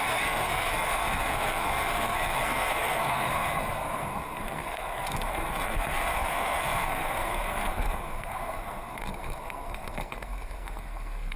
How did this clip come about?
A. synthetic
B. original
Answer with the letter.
A